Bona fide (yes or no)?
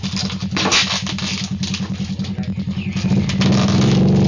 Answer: yes